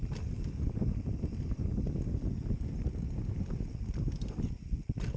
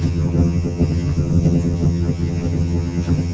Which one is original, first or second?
first